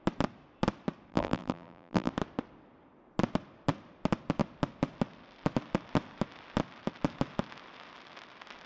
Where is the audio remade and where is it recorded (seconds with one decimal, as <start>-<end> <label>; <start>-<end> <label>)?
0.0-1.1 recorded; 1.1-2.1 remade; 2.1-8.7 recorded